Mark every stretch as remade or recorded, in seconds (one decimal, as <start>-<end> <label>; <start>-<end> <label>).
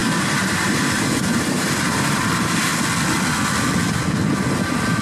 0.0-2.7 remade; 2.7-4.5 recorded; 4.5-5.0 remade